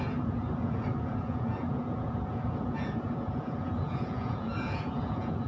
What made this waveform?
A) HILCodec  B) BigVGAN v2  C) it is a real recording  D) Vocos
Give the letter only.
D